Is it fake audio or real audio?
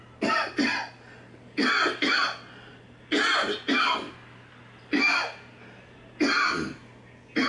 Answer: real